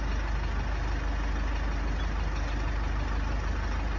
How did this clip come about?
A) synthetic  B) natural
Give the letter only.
B